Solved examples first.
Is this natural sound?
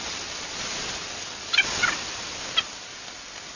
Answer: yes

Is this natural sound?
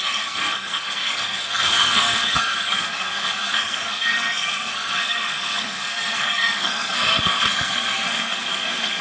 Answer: no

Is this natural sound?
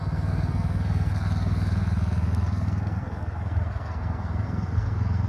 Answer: no